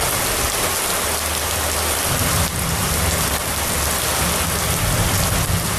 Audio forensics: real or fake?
real